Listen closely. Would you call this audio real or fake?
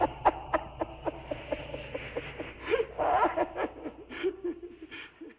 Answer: real